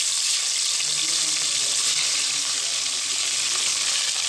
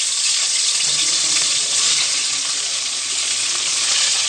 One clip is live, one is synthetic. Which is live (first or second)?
first